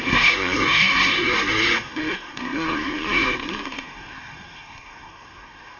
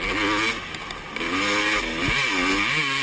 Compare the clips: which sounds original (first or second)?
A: second